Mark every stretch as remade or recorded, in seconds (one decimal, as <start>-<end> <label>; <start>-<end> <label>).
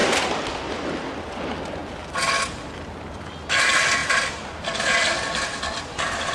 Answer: 0.0-1.4 remade; 1.4-4.0 recorded; 4.0-5.6 remade; 5.6-6.3 recorded